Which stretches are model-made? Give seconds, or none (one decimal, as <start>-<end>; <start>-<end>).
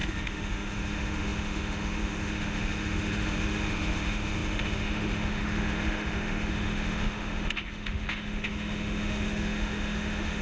0.0-10.4